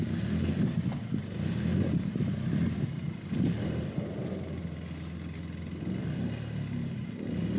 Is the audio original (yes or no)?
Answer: yes